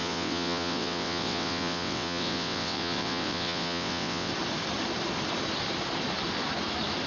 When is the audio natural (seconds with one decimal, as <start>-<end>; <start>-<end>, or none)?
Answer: 4.3-7.1